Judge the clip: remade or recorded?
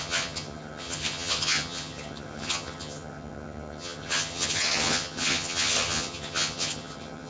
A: remade